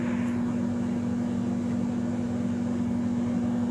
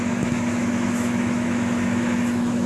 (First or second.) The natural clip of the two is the first